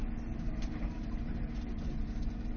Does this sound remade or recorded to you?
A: remade